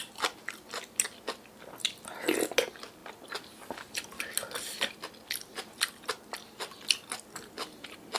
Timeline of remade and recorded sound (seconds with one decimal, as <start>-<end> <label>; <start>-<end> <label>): 0.0-8.2 recorded